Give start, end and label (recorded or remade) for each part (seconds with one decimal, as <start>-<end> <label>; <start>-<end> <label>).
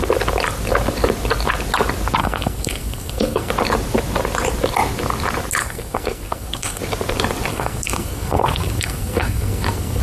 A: 0.0-2.2 recorded; 2.2-3.5 remade; 3.5-5.6 recorded; 5.6-6.8 remade; 6.8-7.5 recorded; 7.5-10.0 remade